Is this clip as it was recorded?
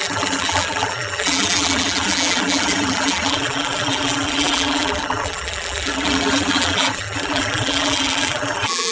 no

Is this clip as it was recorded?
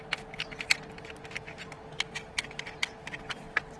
yes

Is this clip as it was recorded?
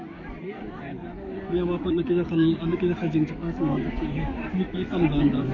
no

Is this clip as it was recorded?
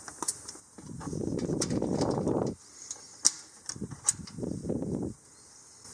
yes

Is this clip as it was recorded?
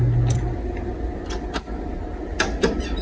yes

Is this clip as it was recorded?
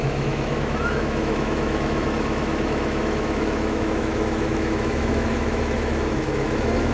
no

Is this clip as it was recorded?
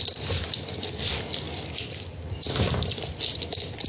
yes